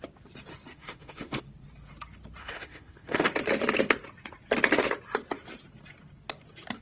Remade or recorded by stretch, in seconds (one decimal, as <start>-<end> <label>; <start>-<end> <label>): 0.0-0.7 recorded; 0.7-1.4 remade; 1.4-2.4 recorded; 2.4-3.3 remade; 3.3-6.8 recorded